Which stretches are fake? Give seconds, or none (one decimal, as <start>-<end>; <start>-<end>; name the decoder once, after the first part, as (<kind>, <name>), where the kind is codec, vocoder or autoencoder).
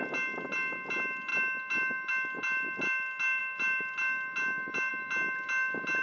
none